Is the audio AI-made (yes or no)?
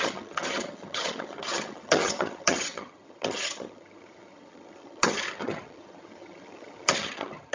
yes